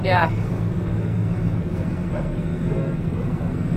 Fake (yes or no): yes